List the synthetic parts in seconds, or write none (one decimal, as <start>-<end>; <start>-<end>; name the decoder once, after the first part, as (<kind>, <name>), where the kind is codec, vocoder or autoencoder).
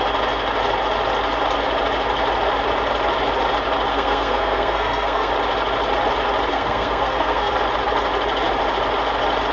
3.9-5.3 (codec, SNAC); 6.5-7.5